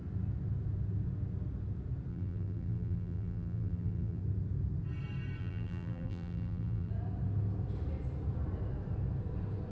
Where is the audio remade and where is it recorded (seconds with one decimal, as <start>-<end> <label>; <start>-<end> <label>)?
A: 0.0-2.1 recorded; 2.1-4.2 remade; 4.2-5.4 recorded; 5.4-6.9 remade; 6.9-9.7 recorded